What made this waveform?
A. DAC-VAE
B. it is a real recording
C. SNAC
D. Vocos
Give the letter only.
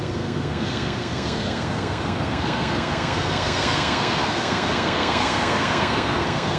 C